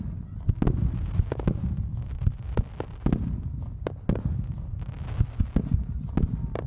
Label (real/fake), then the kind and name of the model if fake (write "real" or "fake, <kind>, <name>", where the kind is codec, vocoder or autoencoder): real